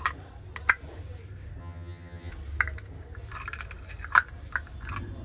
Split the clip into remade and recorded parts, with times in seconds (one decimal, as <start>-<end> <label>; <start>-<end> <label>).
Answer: 0.0-1.6 recorded; 1.6-2.3 remade; 2.3-5.2 recorded